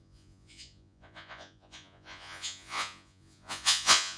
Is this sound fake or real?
fake